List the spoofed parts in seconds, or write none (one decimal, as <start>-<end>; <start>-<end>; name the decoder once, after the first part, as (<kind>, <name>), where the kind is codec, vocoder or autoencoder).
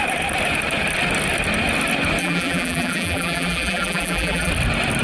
2.2-4.5 (vocoder, BigVGAN v2)